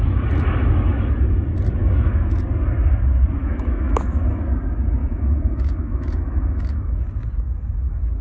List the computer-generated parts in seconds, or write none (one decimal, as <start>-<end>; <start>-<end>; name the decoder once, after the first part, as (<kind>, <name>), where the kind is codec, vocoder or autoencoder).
1.8-2.4 (autoencoder, DAC-VAE); 3.4-4.4; 5.0-7.0